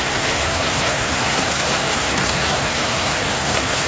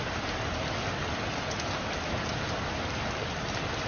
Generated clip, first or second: first